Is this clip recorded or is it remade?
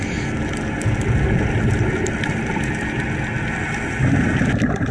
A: recorded